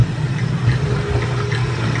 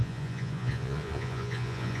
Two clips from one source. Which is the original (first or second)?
first